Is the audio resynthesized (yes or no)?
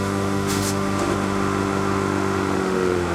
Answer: yes